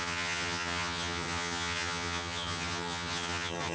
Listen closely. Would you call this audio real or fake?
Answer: fake